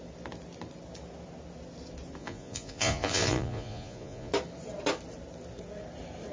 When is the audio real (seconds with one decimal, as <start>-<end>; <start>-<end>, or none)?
0.0-2.2; 4.3-6.3